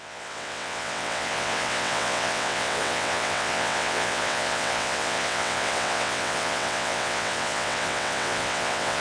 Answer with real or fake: fake